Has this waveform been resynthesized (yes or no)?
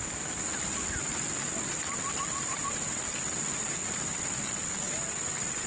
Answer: no